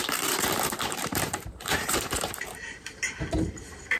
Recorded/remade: remade